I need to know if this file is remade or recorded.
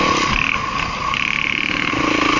recorded